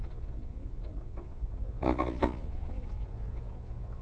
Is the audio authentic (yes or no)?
no